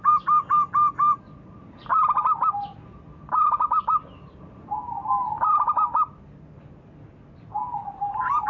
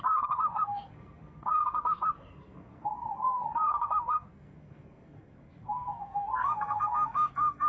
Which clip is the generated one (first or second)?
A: second